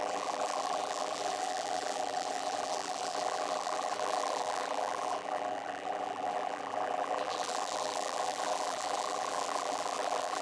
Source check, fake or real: fake